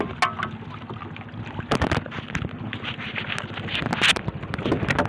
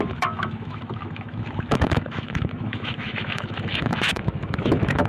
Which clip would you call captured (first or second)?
first